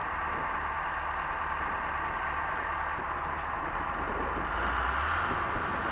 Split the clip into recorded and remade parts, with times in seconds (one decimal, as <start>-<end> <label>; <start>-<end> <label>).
0.0-5.9 recorded